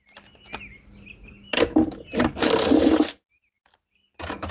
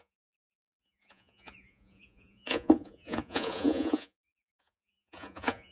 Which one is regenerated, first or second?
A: second